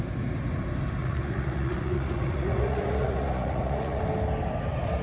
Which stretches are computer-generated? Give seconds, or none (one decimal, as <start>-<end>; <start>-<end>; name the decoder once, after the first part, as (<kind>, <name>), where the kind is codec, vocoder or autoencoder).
1.0-4.0 (vocoder, Vocos)